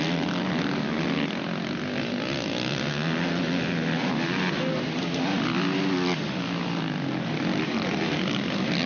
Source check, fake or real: real